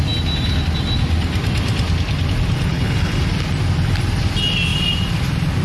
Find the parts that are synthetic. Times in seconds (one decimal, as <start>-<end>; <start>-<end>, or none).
2.7-3.2